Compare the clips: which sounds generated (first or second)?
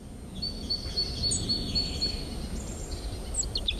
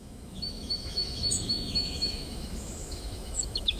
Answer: second